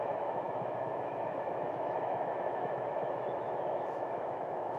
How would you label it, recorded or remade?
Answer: remade